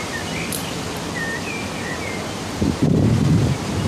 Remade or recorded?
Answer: recorded